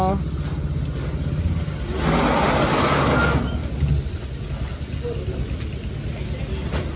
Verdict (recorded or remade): recorded